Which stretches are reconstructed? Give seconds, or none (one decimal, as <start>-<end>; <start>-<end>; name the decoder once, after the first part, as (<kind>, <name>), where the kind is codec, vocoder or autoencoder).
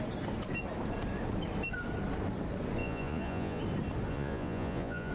2.8-3.6 (vocoder, Vocos); 4.1-5.1